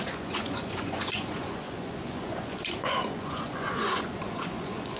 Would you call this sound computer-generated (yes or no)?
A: yes